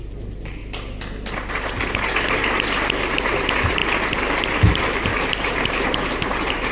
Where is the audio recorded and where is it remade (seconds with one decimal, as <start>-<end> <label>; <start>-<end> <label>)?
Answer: 0.0-0.6 remade; 0.6-3.1 recorded; 3.1-3.8 remade; 3.8-5.3 recorded; 5.3-6.7 remade